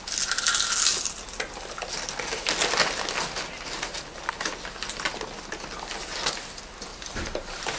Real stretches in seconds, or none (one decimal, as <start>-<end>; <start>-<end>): 0.0-6.9